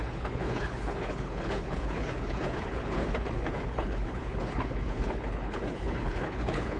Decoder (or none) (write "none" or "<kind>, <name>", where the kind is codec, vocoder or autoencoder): codec, HILCodec